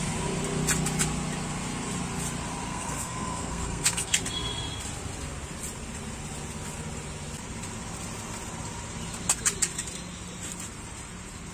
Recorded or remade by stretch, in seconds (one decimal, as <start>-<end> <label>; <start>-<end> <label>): 0.0-2.7 recorded; 2.7-4.2 remade; 4.2-11.5 recorded